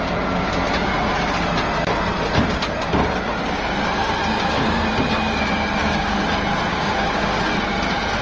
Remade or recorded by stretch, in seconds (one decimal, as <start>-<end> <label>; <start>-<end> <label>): 0.0-5.8 recorded; 5.8-6.3 remade; 6.3-6.7 recorded; 6.7-7.4 remade; 7.4-8.2 recorded